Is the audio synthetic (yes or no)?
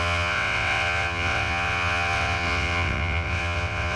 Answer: yes